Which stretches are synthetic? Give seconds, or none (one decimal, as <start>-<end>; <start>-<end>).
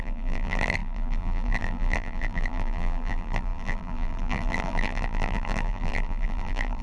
0.0-6.8